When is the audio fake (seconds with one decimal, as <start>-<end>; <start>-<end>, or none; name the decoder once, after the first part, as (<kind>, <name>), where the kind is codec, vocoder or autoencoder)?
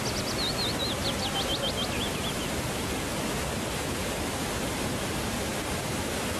none